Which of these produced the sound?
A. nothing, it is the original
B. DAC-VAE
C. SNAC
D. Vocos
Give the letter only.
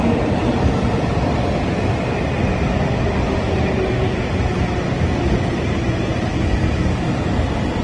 A